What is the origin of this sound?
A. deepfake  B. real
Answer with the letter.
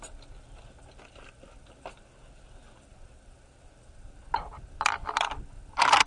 B